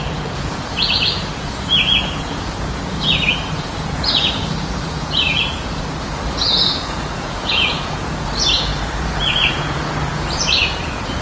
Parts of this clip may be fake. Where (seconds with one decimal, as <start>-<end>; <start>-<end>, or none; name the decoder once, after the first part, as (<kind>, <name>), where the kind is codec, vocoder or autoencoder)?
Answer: 0.0-11.2 (vocoder, Vocos)